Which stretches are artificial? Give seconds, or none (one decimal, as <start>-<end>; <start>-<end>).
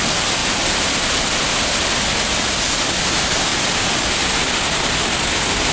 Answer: 0.4-1.9; 3.5-4.5